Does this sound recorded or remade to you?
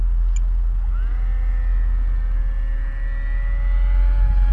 recorded